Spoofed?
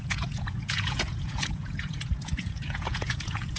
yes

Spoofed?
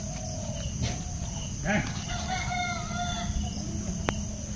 no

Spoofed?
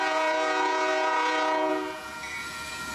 yes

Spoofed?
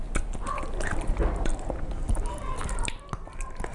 no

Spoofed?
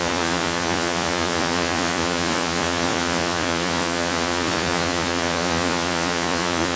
yes